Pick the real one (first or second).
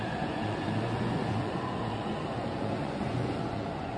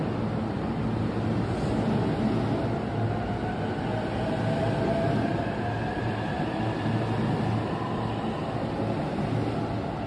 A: second